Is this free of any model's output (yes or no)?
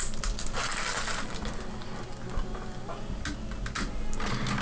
yes